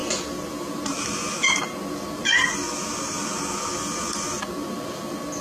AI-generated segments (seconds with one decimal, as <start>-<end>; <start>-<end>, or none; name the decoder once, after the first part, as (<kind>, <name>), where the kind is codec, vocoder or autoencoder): none